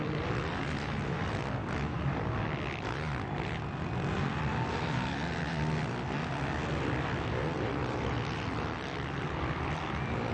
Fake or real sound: real